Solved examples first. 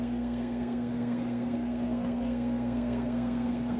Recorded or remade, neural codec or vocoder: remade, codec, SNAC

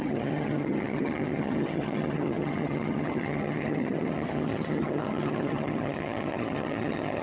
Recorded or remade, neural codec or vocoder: remade, vocoder, HiFi-GAN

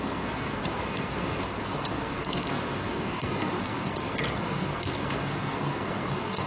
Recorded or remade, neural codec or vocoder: remade, codec, SNAC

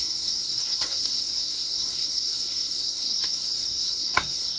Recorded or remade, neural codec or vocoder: remade, codec, SNAC